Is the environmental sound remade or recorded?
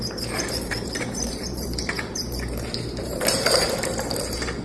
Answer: remade